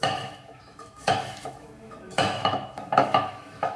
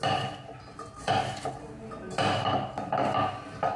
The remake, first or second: first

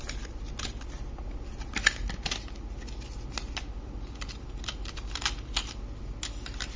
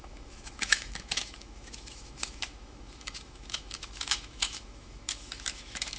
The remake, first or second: second